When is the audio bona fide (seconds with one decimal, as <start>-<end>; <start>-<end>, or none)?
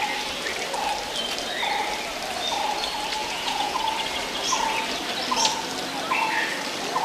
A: 0.0-3.2; 3.8-7.0